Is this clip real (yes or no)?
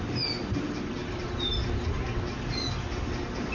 yes